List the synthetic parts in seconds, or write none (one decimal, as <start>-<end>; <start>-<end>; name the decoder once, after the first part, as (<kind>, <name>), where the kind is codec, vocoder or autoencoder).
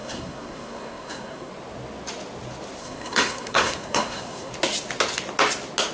0.0-1.5 (codec, SNAC); 2.8-4.5